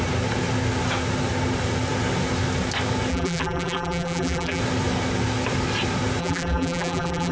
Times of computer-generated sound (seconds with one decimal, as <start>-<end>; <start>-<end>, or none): 3.1-4.6; 6.2-7.3